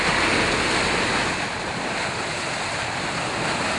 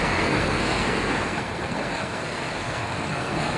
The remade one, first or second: second